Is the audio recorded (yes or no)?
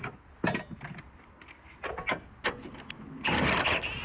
yes